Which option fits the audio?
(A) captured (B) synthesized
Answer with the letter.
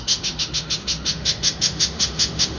B